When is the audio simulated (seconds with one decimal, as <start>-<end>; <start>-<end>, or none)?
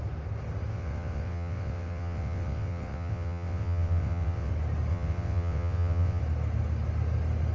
0.7-4.5; 4.9-6.2